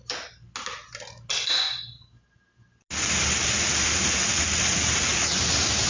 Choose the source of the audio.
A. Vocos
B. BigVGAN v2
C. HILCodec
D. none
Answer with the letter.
D